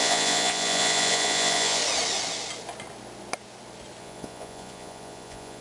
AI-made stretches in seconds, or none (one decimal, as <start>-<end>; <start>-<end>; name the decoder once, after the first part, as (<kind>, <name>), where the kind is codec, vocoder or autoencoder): 0.0-1.8 (vocoder, Vocos); 4.0-5.6